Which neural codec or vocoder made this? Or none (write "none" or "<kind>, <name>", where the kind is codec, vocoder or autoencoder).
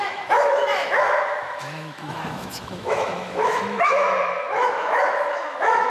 autoencoder, DAC-VAE